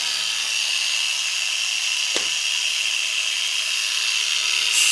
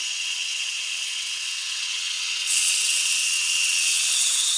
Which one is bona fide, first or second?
first